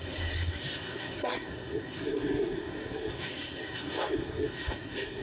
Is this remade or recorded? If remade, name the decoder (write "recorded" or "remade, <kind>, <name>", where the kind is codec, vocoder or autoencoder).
remade, codec, SNAC